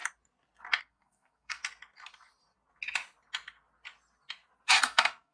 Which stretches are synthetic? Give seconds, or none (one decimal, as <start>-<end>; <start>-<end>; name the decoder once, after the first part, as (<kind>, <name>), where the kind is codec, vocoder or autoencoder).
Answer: 0.8-1.6 (codec, SNAC); 4.8-5.3